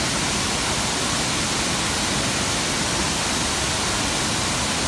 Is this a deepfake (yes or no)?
no